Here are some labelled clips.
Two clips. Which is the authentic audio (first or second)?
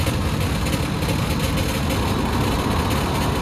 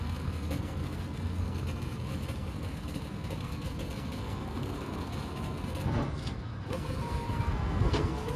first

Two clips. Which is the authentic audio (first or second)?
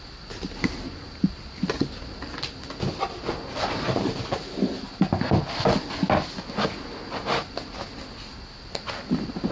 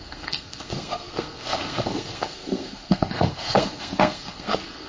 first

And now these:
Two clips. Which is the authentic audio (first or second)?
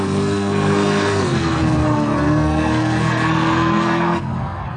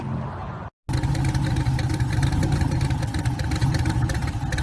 second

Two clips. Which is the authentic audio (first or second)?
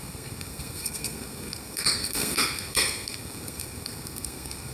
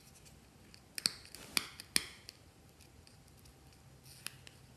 second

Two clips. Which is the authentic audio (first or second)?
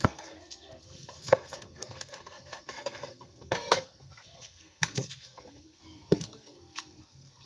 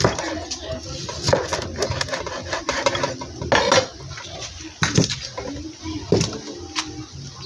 second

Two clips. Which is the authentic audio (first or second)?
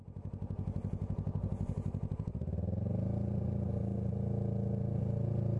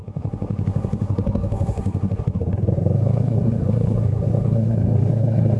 first